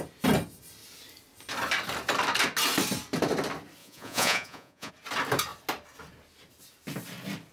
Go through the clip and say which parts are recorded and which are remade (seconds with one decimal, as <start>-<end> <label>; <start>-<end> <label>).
0.0-3.8 recorded; 3.8-4.9 remade; 4.9-7.5 recorded

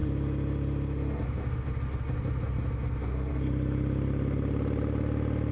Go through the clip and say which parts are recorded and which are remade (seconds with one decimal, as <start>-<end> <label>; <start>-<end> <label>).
0.0-5.5 recorded

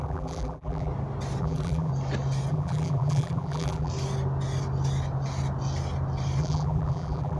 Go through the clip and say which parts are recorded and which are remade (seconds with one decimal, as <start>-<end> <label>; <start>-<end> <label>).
0.0-0.9 remade; 0.9-1.4 recorded; 1.4-1.9 remade; 1.9-2.5 recorded; 2.5-3.9 remade; 3.9-6.4 recorded; 6.4-7.4 remade

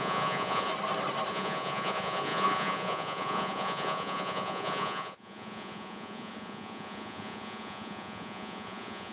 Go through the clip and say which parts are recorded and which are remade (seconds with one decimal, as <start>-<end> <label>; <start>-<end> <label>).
0.0-0.7 remade; 0.7-1.3 recorded; 1.3-9.1 remade